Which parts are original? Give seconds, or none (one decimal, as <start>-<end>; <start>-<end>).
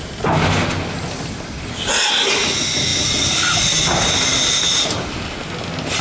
0.0-6.0